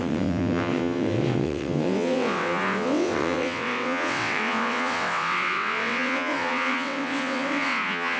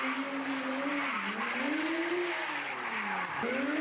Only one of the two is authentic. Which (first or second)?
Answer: second